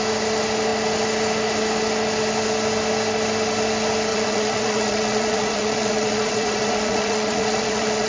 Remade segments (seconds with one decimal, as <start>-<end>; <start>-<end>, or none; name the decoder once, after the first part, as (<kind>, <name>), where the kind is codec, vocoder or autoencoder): 4.1-8.1 (vocoder, Vocos)